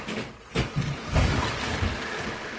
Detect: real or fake real